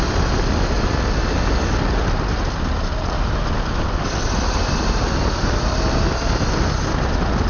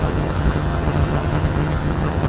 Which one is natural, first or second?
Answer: first